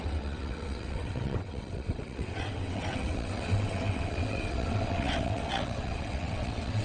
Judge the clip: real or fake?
fake